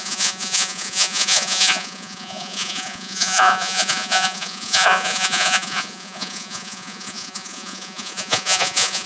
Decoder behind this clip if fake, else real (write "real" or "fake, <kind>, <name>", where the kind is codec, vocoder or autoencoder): fake, vocoder, Vocos